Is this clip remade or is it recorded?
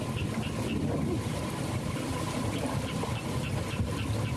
recorded